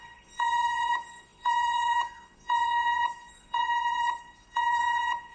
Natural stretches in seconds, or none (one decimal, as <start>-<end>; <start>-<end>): none